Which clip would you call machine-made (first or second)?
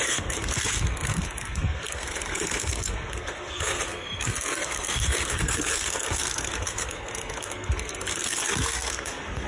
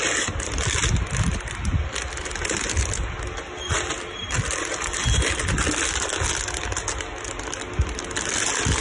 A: first